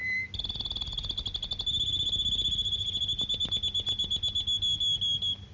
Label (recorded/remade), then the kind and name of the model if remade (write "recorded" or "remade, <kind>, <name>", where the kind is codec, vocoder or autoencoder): recorded